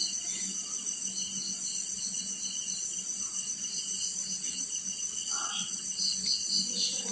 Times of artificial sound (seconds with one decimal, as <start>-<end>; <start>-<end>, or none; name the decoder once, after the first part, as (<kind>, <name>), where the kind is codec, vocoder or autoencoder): 5.1-5.8 (vocoder, WaveNeXt)